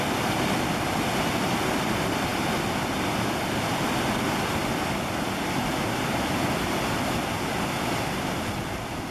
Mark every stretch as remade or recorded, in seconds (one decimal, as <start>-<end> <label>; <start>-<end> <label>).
0.0-9.1 recorded